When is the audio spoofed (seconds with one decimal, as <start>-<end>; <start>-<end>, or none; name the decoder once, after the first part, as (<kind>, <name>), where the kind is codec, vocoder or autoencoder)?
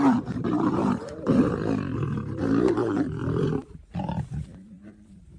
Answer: 0.0-3.2 (vocoder, BigVGAN v2); 4.0-5.4